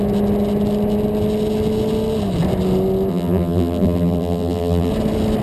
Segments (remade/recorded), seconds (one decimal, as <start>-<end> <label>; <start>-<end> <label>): 0.0-3.1 recorded; 3.1-4.9 remade; 4.9-5.4 recorded